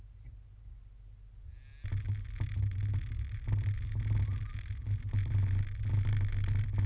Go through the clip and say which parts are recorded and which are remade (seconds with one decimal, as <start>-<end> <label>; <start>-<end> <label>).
0.0-6.9 recorded